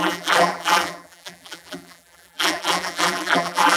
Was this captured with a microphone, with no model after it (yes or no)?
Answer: no